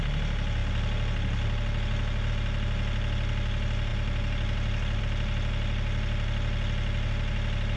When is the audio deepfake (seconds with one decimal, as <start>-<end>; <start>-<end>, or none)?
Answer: none